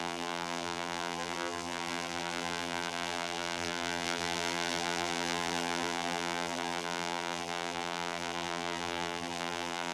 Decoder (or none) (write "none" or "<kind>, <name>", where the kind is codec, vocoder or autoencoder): vocoder, BigVGAN v2